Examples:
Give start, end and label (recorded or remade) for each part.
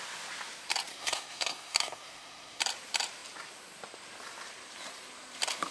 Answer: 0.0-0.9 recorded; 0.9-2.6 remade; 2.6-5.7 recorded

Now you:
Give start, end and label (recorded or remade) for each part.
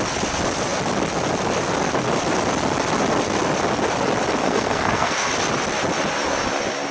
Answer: 0.0-4.4 recorded; 4.4-5.3 remade; 5.3-6.9 recorded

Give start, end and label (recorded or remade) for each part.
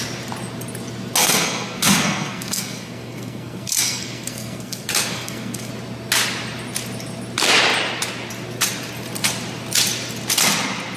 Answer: 0.0-1.2 recorded; 1.2-5.7 remade; 5.7-11.0 recorded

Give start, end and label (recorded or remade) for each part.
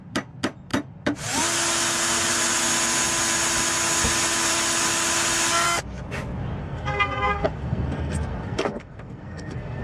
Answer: 0.0-6.6 recorded; 6.6-9.8 remade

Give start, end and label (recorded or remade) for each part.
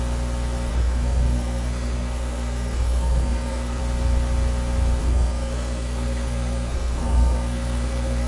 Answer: 0.0-0.7 recorded; 0.7-3.8 remade; 3.8-5.0 recorded; 5.0-8.3 remade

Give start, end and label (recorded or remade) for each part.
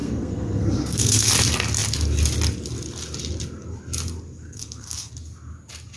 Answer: 0.0-1.3 remade; 1.3-4.4 recorded; 4.4-5.1 remade; 5.1-6.0 recorded